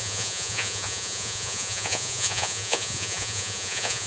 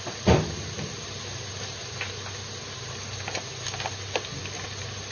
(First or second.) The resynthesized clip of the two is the first